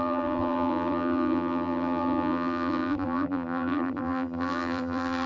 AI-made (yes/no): yes